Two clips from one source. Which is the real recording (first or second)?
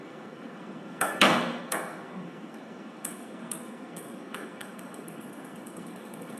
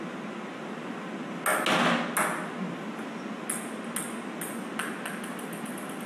second